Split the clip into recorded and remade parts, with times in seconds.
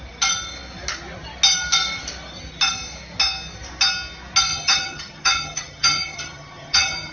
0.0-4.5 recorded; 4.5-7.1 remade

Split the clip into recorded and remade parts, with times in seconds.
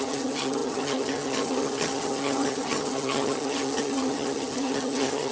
0.0-5.3 remade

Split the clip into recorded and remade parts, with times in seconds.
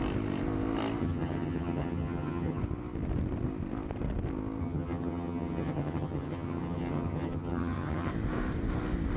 0.0-1.0 recorded; 1.0-2.6 remade; 2.6-4.6 recorded; 4.6-8.1 remade; 8.1-9.2 recorded